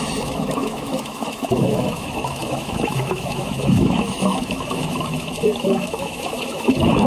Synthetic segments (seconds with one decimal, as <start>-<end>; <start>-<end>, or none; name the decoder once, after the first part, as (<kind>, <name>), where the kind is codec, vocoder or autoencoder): 0.0-7.1 (autoencoder, DAC-VAE)